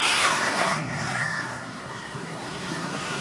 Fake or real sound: fake